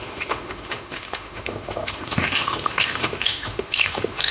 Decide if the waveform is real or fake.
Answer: fake